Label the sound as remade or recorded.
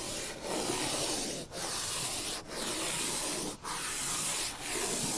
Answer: recorded